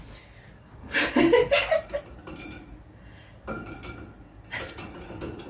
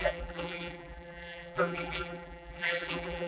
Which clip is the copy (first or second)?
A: second